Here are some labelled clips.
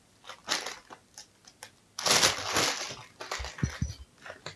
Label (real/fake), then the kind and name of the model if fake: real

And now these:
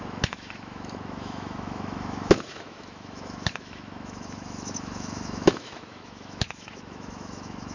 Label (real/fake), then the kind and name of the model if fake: fake, autoencoder, DAC-VAE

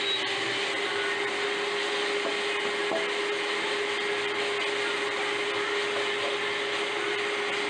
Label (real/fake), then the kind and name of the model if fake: real